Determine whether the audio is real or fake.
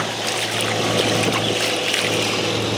real